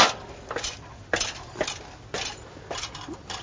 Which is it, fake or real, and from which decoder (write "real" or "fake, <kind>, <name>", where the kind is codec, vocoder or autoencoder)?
real